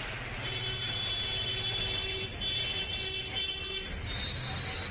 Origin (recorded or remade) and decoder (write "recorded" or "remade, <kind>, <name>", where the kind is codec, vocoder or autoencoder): recorded